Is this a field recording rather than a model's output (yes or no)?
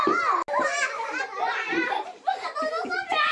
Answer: yes